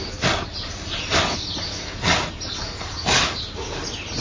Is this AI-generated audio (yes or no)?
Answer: no